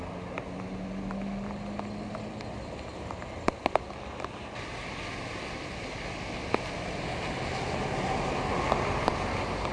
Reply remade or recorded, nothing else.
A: recorded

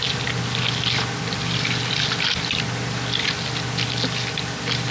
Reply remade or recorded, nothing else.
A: recorded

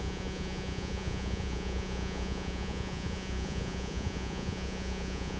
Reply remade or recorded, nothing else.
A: remade